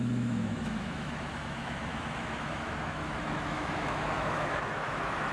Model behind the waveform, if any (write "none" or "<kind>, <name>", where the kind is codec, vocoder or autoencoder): autoencoder, DAC-VAE